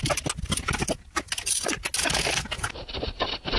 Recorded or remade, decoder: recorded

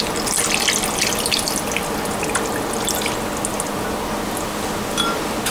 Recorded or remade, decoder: recorded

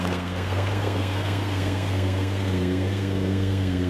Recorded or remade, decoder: remade, codec, SNAC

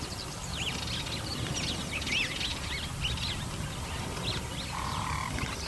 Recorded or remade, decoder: recorded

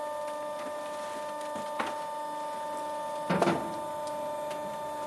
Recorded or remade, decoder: recorded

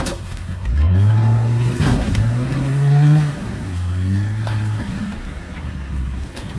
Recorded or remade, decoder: remade, codec, SNAC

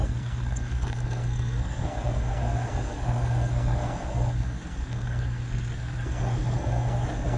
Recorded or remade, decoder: remade, codec, SNAC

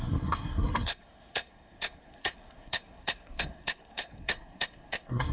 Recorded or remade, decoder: remade, codec, SNAC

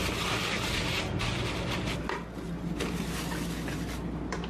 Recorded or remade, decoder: recorded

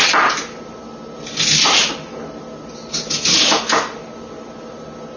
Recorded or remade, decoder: recorded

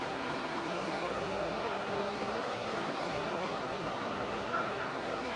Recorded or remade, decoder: remade, codec, SNAC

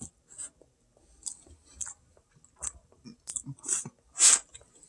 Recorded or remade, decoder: recorded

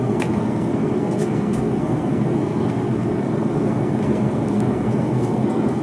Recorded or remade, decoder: remade, codec, SNAC